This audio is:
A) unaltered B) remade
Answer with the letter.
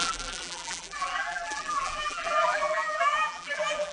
B